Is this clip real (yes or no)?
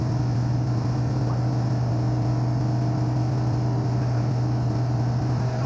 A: yes